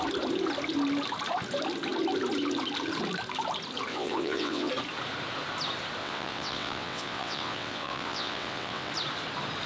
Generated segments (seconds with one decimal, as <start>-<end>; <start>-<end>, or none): 3.9-4.7; 6.0-8.9